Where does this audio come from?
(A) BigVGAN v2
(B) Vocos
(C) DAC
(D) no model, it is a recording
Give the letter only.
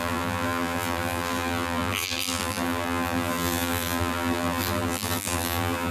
A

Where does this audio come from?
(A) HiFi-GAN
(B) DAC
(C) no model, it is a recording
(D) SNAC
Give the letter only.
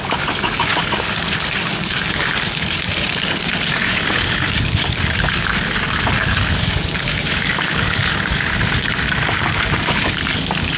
B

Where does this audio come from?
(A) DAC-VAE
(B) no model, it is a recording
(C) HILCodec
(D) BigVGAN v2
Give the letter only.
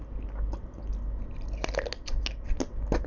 B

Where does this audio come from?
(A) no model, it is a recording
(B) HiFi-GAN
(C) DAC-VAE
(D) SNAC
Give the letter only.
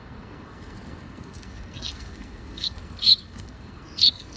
D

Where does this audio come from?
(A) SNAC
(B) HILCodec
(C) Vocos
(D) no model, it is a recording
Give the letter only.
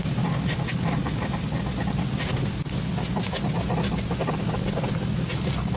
D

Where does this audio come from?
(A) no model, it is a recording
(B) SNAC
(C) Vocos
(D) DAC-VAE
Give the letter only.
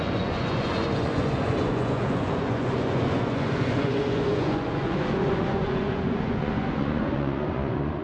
C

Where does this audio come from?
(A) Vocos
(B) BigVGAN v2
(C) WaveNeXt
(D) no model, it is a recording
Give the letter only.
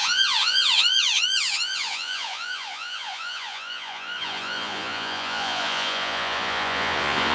A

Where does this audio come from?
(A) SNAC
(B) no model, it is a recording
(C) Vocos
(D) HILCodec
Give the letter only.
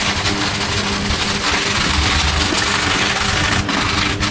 B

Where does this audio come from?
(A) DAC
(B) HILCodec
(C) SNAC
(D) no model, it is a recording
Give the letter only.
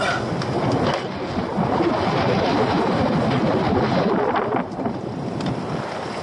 D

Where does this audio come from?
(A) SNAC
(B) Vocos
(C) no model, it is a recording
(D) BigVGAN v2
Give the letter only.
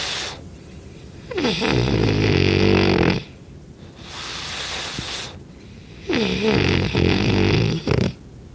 C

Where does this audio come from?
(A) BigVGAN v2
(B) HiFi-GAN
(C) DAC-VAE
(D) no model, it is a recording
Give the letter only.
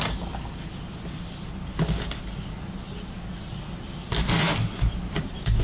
D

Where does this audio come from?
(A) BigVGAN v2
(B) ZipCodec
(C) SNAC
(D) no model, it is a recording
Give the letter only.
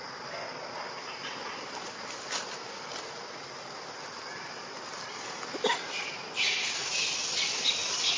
D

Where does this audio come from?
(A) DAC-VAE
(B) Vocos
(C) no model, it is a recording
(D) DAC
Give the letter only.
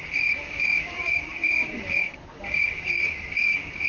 D